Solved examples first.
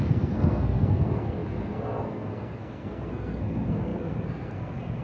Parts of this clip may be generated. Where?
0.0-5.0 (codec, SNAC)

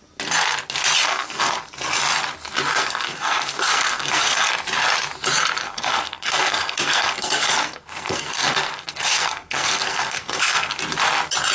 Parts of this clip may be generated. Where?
1.1-1.6 (codec, SNAC); 2.7-4.5; 5.6-10.8

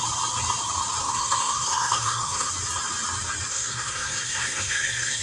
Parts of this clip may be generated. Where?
1.0-2.5 (codec, SNAC); 3.5-5.2

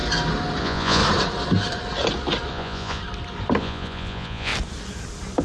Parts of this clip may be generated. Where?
0.6-1.0 (vocoder, Vocos); 2.5-3.0; 3.6-4.5

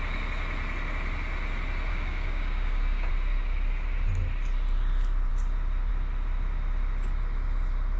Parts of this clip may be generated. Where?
1.9-3.1 (codec, DAC)

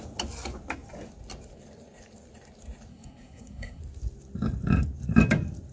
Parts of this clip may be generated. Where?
2.9-3.8 (codec, SNAC)